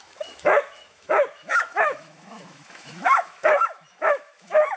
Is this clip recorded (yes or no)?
no